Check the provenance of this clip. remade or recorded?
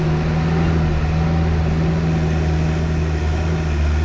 recorded